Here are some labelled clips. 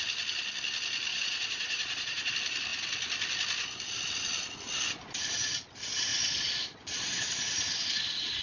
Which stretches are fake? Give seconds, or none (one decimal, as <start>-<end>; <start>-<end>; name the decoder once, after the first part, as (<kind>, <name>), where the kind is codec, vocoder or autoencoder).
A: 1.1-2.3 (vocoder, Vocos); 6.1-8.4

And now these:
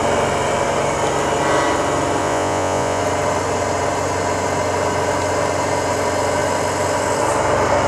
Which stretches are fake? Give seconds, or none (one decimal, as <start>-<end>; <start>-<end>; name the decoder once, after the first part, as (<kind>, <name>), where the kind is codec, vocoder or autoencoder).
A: 2.2-3.0 (vocoder, Vocos)

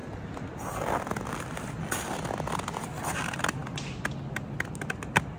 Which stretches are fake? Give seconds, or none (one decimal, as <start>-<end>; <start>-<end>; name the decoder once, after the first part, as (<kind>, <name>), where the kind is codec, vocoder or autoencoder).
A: none

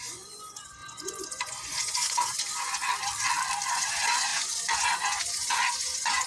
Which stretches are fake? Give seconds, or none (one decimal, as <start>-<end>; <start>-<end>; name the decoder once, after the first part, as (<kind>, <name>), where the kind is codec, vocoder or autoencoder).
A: 0.0-2.9 (vocoder, Vocos); 3.7-6.3

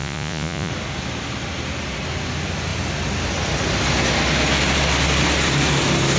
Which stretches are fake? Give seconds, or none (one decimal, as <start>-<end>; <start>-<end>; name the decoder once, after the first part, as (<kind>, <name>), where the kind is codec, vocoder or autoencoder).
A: 0.0-0.7 (vocoder, Vocos)

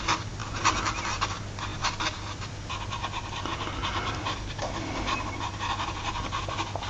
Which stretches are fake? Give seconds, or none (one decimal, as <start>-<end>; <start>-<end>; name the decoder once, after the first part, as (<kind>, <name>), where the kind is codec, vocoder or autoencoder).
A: none

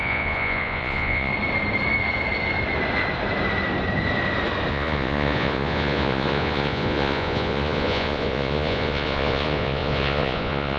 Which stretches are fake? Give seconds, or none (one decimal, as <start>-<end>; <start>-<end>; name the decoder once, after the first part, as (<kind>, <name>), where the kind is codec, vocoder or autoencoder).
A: 0.0-1.3 (vocoder, Vocos); 4.7-10.8